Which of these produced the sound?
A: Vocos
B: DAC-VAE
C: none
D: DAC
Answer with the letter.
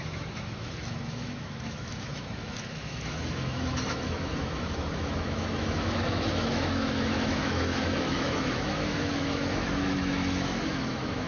B